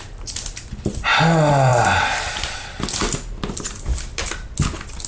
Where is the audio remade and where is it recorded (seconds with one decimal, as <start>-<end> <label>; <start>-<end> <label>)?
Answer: 0.0-5.1 recorded